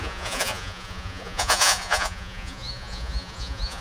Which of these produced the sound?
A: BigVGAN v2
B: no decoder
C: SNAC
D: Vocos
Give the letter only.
D